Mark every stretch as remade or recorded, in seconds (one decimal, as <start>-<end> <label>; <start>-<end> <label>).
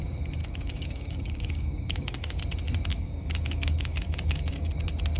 0.0-0.4 recorded; 0.4-2.4 remade; 2.4-2.9 recorded; 2.9-4.7 remade; 4.7-5.2 recorded